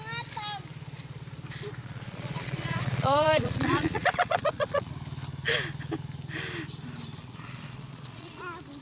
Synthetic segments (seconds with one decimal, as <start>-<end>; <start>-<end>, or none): 1.8-4.9; 7.2-8.4